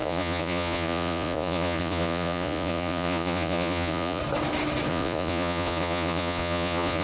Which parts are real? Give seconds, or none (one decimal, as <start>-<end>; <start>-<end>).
4.2-4.9